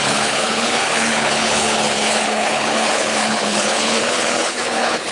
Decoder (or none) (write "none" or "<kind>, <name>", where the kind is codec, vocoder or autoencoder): codec, HILCodec